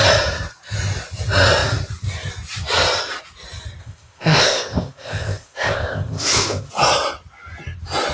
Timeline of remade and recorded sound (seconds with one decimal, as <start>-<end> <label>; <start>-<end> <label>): 0.0-3.8 recorded; 3.8-6.7 remade; 6.7-8.1 recorded